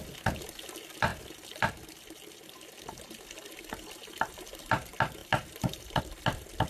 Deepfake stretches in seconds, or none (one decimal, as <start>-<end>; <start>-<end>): 1.1-4.6; 5.2-6.0